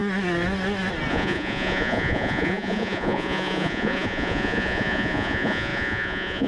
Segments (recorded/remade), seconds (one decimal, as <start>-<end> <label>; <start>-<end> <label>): 0.0-1.1 recorded; 1.1-6.5 remade